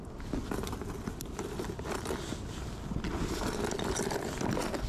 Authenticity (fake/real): real